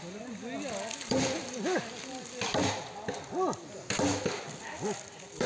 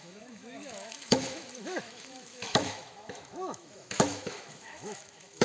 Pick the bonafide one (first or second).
first